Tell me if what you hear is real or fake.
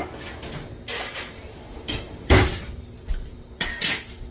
real